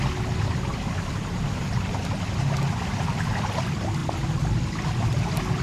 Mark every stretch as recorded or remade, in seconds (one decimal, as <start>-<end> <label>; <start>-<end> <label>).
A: 0.0-5.6 recorded